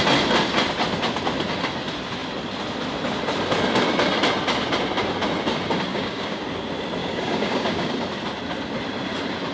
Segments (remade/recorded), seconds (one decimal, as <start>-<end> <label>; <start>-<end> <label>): 0.0-5.9 recorded; 5.9-6.4 remade; 6.4-7.0 recorded; 7.0-7.9 remade; 7.9-9.5 recorded